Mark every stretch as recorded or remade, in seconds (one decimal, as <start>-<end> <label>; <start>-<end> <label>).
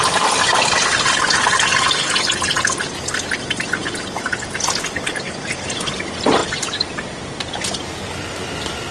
0.0-0.5 remade; 0.5-1.2 recorded; 1.2-1.7 remade; 1.7-5.7 recorded; 5.7-8.9 remade